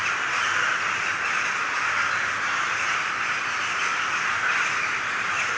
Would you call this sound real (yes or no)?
yes